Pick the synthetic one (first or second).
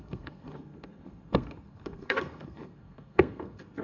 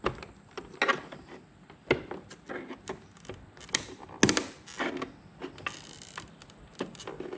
first